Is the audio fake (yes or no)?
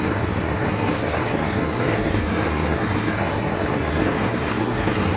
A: yes